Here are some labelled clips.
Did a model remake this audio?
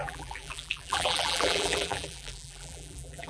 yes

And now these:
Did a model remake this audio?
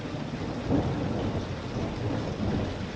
no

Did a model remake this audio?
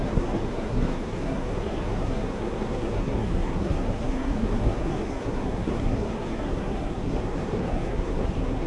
yes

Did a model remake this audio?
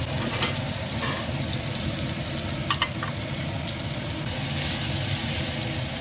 no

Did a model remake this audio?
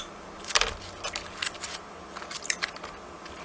yes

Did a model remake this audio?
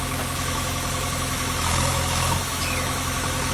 yes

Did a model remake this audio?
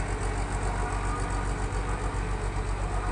no